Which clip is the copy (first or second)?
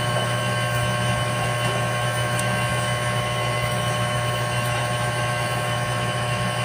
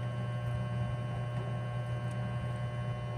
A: first